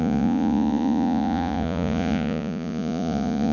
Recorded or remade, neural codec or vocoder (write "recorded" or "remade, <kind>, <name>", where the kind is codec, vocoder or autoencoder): remade, vocoder, Vocos